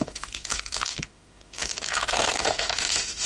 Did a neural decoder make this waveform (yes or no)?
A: yes